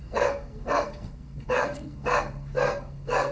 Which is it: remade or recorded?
remade